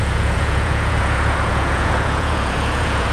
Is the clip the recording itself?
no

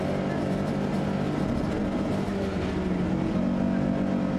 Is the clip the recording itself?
yes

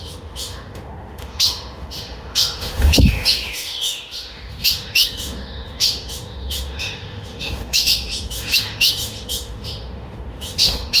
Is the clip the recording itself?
no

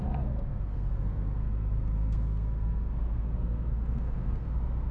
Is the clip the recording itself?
no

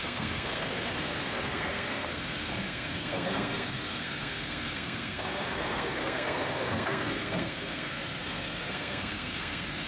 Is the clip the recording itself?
no